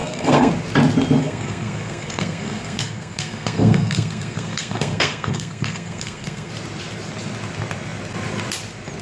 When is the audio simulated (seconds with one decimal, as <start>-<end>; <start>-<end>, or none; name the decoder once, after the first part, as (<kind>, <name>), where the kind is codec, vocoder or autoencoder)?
0.0-0.5 (codec, SNAC); 1.2-6.5